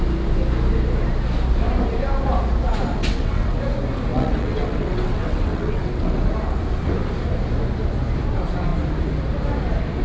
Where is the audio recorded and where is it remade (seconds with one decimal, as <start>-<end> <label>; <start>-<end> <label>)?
0.0-3.0 recorded; 3.0-3.6 remade; 3.6-4.1 recorded; 4.1-6.3 remade; 6.3-10.0 recorded

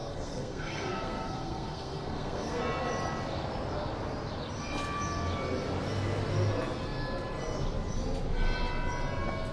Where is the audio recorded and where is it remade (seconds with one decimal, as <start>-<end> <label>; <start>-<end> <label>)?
0.0-2.6 remade; 2.6-9.5 recorded

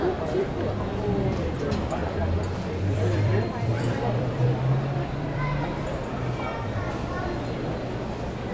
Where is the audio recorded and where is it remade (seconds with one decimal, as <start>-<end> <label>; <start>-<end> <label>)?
0.0-2.0 recorded; 2.0-5.6 remade; 5.6-8.5 recorded

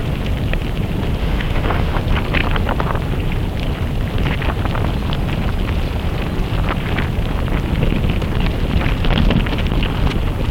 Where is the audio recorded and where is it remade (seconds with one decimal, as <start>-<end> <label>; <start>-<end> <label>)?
0.0-1.2 recorded; 1.2-2.0 remade; 2.0-10.5 recorded

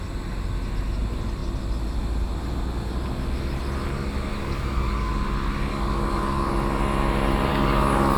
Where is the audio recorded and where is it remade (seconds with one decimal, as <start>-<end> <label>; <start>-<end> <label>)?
0.0-4.3 recorded; 4.3-5.1 remade; 5.1-5.7 recorded; 5.7-6.5 remade; 6.5-7.5 recorded; 7.5-8.2 remade

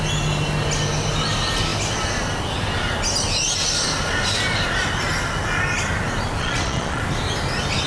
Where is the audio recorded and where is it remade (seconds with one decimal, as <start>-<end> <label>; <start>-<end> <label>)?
0.0-6.4 recorded; 6.4-7.0 remade; 7.0-7.9 recorded

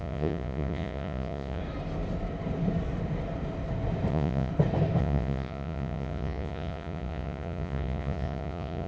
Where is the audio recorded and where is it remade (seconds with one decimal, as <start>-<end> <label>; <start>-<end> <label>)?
0.0-1.6 remade; 1.6-4.1 recorded; 4.1-4.5 remade; 4.5-5.0 recorded; 5.0-8.9 remade